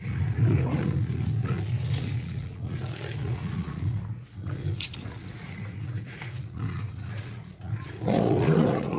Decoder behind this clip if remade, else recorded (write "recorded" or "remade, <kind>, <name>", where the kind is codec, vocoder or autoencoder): remade, vocoder, Vocos